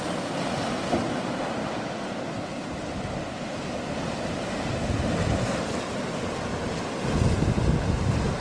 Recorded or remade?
recorded